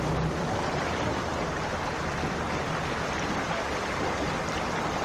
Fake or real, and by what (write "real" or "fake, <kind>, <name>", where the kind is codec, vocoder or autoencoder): real